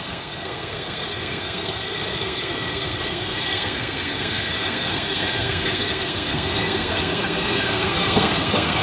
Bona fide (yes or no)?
no